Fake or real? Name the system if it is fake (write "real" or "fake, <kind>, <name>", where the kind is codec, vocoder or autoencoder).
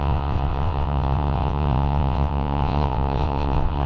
fake, vocoder, WaveNeXt